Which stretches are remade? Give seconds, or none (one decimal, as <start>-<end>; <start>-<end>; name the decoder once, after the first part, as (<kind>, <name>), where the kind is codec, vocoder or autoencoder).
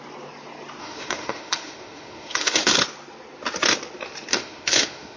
0.8-2.7 (autoencoder, DAC-VAE); 4.3-5.2